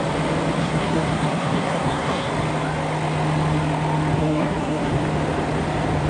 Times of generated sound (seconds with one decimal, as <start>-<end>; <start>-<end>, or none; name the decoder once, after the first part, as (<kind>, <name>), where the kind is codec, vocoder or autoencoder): 0.6-2.3 (codec, SNAC); 4.2-4.9